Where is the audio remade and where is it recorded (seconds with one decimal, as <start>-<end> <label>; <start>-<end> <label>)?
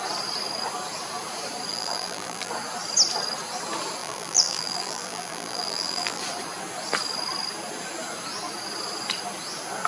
0.0-1.7 recorded; 1.7-2.5 remade; 2.5-4.0 recorded; 4.0-6.2 remade; 6.2-9.9 recorded